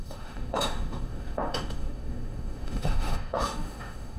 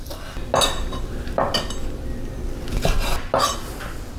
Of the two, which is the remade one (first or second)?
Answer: first